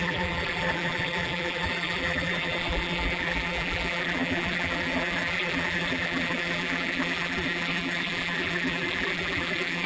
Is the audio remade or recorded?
remade